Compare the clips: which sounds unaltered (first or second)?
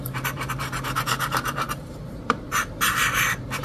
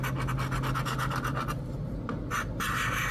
second